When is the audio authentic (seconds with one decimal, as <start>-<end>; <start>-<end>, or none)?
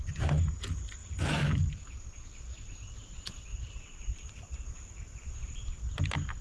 0.0-1.0; 1.7-3.5; 6.0-6.4